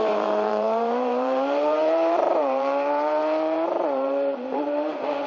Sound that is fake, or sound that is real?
fake